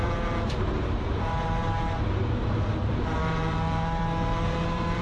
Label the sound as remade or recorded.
remade